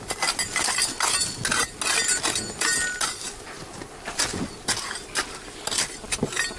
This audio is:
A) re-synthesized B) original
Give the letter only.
B